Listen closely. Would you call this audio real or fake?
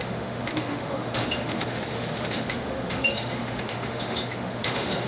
fake